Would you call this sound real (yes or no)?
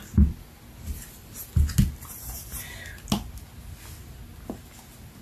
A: yes